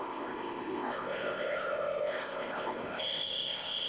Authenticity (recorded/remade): remade